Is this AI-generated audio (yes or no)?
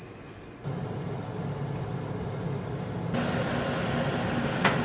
no